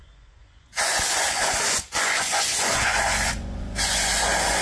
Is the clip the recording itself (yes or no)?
no